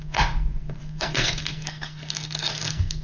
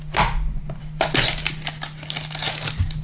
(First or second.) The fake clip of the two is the first